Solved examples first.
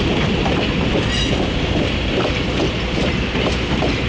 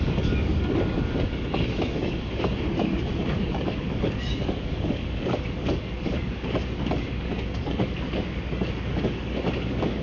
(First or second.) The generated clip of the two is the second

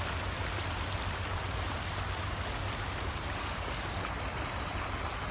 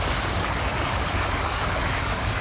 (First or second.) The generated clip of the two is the second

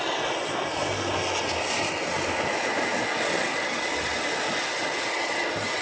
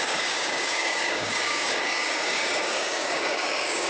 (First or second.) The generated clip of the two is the second